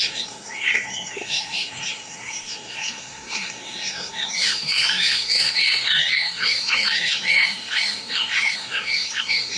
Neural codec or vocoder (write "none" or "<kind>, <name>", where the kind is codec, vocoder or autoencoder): codec, SNAC